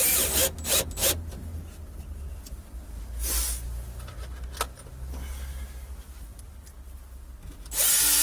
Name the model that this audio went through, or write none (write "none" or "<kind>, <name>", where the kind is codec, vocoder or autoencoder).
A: none